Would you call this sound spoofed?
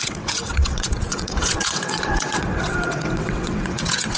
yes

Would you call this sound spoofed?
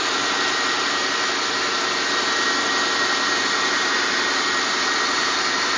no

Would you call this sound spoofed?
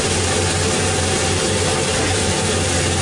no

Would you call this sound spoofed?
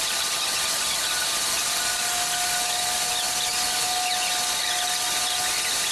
no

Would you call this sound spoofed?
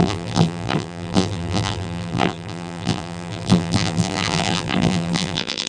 yes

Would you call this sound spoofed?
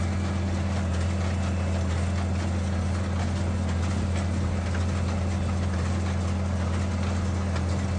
no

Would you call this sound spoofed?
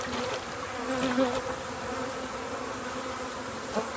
no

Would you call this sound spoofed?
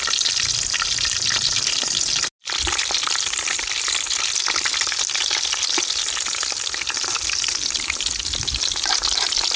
no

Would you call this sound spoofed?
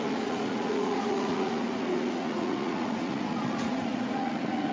yes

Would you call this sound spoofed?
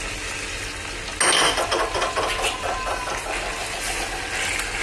no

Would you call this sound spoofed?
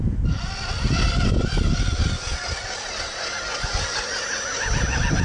no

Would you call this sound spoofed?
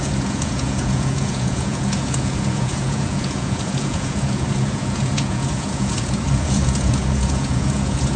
yes